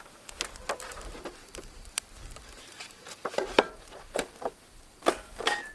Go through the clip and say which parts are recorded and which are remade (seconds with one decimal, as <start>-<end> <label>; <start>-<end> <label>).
0.0-1.4 recorded; 1.4-4.8 remade; 4.8-5.7 recorded